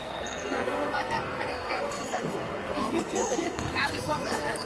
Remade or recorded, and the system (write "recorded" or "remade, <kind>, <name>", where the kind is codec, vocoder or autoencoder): remade, codec, SNAC